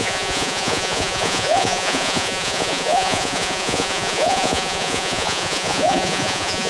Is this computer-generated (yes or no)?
yes